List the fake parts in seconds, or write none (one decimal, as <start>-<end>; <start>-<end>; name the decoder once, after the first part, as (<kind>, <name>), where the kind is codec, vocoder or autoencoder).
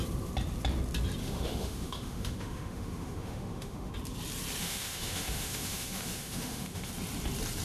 1.2-3.9 (autoencoder, DAC-VAE); 4.6-6.9